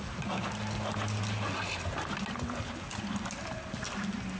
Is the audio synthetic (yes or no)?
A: no